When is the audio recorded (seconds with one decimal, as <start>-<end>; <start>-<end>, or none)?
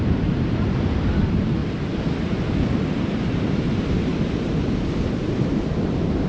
1.6-2.8; 4.1-5.2